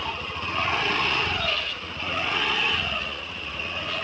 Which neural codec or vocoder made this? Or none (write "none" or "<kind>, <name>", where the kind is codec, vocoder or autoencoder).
vocoder, Vocos